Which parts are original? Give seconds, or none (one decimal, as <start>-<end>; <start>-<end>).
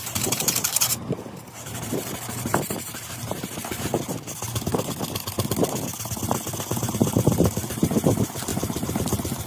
3.9-6.7